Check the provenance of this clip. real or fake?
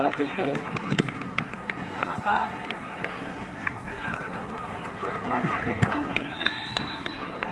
fake